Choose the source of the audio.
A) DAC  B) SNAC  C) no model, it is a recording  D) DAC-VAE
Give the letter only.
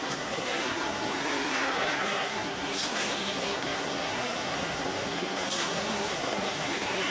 B